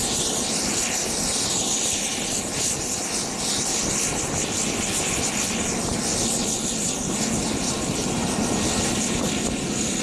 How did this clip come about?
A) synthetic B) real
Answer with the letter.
B